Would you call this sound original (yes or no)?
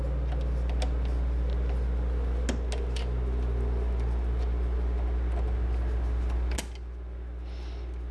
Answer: yes